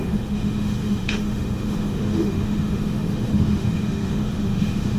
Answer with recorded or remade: remade